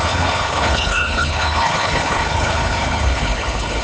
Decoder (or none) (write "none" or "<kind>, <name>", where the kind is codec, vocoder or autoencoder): codec, HILCodec